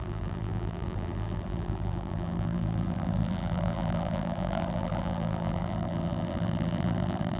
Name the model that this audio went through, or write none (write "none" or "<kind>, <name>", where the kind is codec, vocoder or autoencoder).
vocoder, BigVGAN v2